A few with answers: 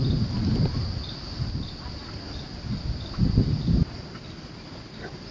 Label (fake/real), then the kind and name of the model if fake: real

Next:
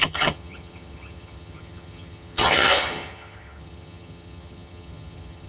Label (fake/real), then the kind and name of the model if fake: fake, vocoder, HiFi-GAN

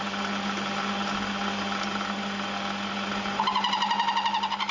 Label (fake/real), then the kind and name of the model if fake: real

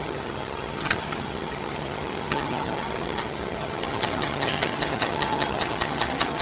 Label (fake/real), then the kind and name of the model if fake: fake, vocoder, HiFi-GAN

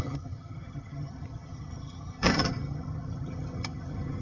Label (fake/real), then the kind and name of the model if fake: fake, vocoder, HiFi-GAN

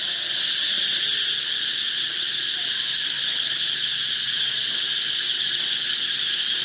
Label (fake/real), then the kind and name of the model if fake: real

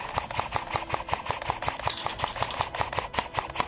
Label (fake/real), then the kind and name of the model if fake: real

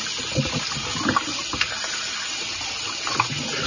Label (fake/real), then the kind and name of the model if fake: real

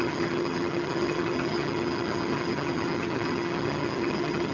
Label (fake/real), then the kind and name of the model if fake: fake, vocoder, HiFi-GAN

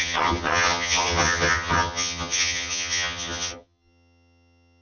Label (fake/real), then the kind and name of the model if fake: fake, vocoder, HiFi-GAN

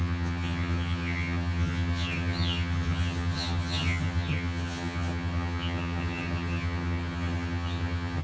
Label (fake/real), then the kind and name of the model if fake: fake, vocoder, HiFi-GAN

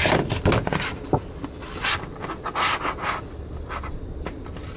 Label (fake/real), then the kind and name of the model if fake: real